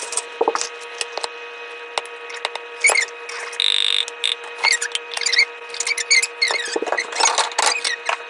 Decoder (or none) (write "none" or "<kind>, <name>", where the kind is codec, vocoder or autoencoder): none